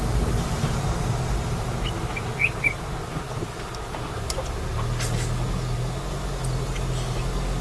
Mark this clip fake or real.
real